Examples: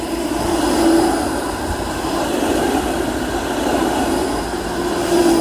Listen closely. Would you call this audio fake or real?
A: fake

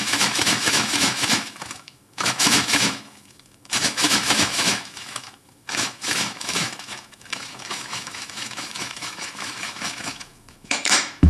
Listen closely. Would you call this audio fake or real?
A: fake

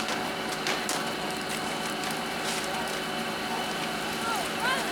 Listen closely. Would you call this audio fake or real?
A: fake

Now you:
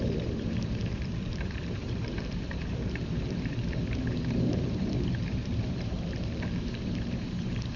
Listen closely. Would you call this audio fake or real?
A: fake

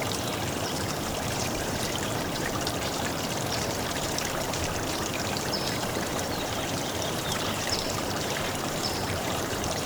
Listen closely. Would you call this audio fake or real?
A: fake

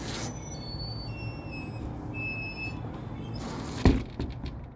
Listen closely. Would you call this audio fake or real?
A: real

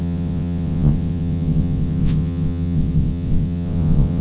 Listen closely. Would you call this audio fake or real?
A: fake